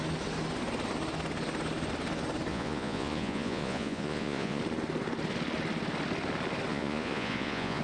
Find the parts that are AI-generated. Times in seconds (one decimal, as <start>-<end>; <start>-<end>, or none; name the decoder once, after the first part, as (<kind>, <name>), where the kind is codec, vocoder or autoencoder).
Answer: 2.5-4.6 (vocoder, Vocos); 6.7-7.8